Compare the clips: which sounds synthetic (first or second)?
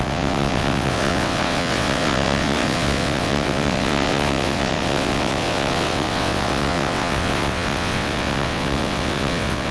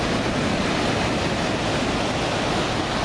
first